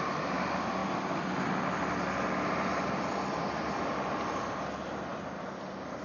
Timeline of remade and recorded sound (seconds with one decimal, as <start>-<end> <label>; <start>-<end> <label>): 0.0-6.0 recorded